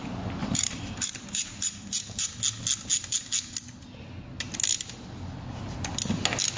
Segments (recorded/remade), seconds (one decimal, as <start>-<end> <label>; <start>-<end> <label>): 0.0-0.4 recorded; 0.4-2.4 remade; 2.4-6.6 recorded